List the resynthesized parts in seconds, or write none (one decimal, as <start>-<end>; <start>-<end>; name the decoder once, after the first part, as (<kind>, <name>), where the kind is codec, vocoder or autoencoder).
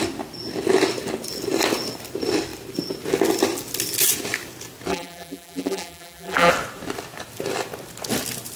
4.9-6.5 (vocoder, BigVGAN v2)